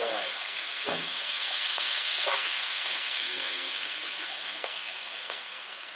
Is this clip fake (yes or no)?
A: yes